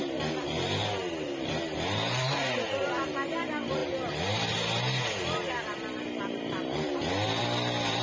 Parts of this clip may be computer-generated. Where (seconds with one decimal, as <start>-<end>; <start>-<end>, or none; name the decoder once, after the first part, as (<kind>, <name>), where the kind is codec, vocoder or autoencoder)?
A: none